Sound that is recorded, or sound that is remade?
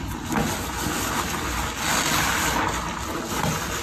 recorded